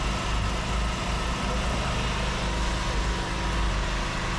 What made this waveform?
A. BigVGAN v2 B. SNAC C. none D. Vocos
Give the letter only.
C